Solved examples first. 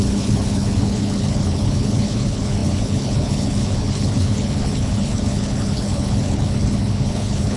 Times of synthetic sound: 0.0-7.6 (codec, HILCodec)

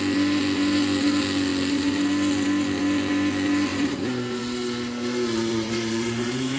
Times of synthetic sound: 3.7-4.4 (vocoder, BigVGAN v2); 5.5-6.6

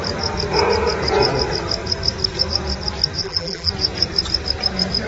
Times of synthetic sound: 3.2-3.7 (vocoder, BigVGAN v2)

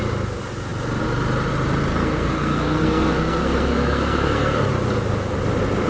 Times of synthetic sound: 1.9-4.7 (codec, SNAC)

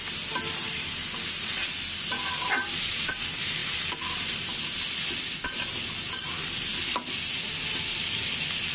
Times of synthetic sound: none

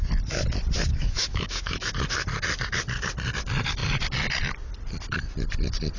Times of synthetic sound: 0.9-1.9 (autoencoder, DAC-VAE)

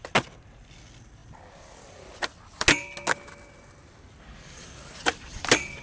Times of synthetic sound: none

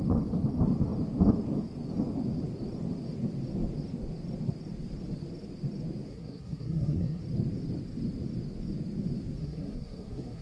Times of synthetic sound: 6.1-7.2 (codec, SNAC); 9.4-10.4